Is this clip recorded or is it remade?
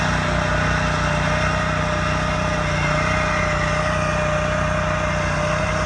recorded